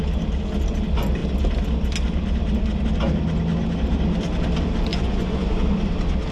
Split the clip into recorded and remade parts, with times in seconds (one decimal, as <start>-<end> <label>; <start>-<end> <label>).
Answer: 0.0-4.9 recorded; 4.9-5.5 remade; 5.5-6.3 recorded